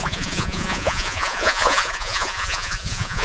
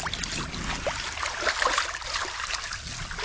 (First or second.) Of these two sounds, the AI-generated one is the first